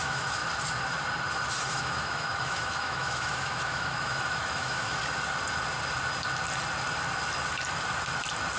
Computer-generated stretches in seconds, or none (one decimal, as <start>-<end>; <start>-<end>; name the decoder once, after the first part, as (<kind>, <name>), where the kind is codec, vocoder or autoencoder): 0.0-0.4 (autoencoder, DAC-VAE); 1.6-5.0